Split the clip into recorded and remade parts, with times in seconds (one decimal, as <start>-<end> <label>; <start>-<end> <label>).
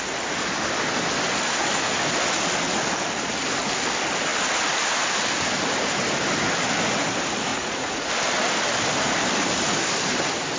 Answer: 0.0-7.5 recorded; 7.5-8.1 remade; 8.1-10.6 recorded